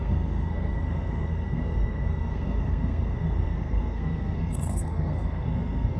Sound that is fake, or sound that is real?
fake